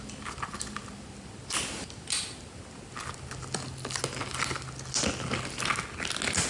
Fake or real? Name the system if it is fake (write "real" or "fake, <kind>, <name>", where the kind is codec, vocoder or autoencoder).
real